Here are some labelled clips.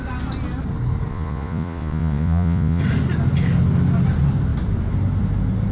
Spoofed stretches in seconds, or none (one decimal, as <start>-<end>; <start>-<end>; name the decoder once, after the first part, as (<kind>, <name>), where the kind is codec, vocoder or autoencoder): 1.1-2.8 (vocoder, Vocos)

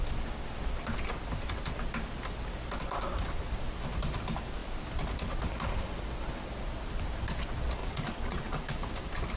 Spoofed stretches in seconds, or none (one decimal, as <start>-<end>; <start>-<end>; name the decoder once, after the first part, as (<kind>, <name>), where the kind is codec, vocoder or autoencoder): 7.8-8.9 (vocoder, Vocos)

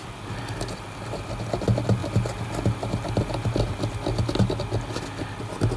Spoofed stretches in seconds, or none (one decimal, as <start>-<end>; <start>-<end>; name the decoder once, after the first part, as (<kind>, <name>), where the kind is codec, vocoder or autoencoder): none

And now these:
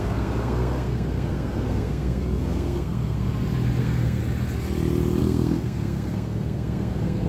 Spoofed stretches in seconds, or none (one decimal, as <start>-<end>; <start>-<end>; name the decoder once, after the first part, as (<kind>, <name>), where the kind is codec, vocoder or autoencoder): 0.0-3.3 (codec, SNAC); 3.8-4.2; 5.2-7.3

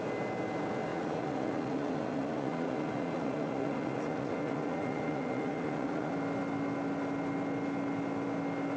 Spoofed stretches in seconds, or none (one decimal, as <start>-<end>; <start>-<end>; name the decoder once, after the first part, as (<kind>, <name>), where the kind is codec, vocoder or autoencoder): 0.9-6.1 (vocoder, Vocos)

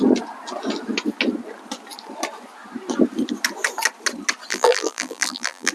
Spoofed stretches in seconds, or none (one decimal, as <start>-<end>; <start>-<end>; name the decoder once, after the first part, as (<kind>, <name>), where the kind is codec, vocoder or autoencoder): 4.5-5.7 (vocoder, BigVGAN v2)